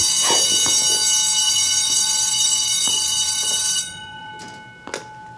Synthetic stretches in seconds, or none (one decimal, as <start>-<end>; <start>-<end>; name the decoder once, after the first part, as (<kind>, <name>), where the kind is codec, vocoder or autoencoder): 1.4-4.3 (vocoder, Vocos)